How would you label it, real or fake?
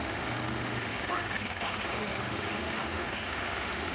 fake